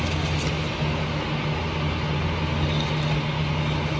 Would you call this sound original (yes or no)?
yes